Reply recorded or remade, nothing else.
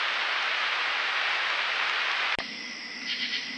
recorded